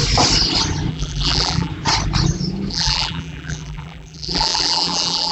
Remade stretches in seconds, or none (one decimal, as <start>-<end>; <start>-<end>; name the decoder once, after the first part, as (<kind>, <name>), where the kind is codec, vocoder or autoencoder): 0.9-1.7 (vocoder, BigVGAN v2); 2.7-5.3